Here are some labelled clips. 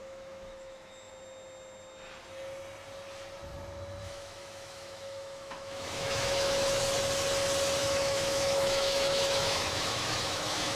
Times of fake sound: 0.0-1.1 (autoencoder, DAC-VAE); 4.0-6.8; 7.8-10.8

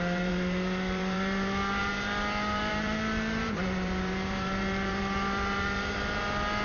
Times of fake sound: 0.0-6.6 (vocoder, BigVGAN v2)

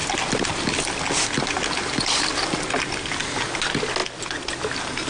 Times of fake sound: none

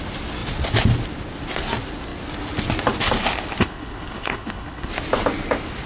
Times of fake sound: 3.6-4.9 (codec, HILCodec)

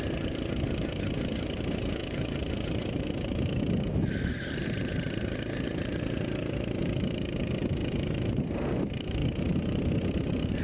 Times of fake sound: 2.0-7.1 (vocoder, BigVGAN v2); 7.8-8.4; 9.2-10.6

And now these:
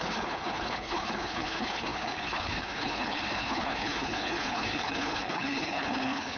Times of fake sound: 0.0-6.4 (codec, HILCodec)

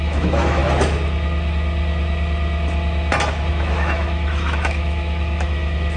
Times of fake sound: 0.0-0.6 (autoencoder, DAC-VAE); 3.5-6.0